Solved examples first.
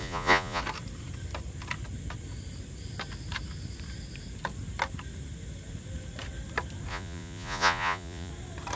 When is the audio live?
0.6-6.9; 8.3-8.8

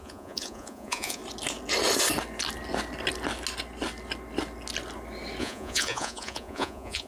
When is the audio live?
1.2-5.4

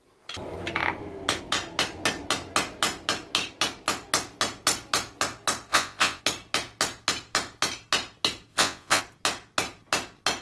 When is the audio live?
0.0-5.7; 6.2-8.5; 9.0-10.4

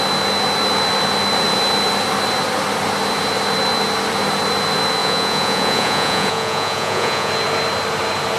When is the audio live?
0.0-5.0; 7.3-8.4

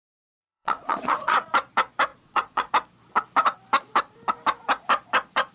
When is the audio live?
0.0-0.4; 1.4-2.1; 2.7-5.5

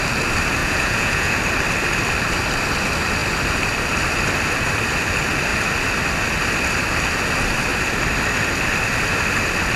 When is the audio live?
0.0-0.6; 1.4-9.8

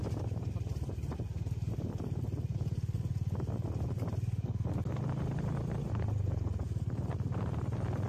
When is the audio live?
0.0-8.1